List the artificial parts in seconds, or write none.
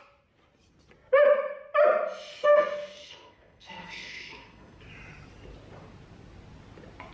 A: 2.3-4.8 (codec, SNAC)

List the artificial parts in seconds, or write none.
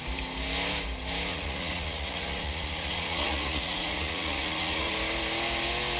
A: 1.3-4.9 (vocoder, Vocos)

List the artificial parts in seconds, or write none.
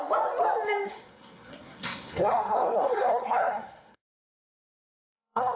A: 0.9-4.3 (codec, SNAC); 5.0-5.6